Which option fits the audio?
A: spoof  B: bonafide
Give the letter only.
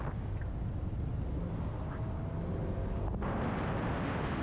B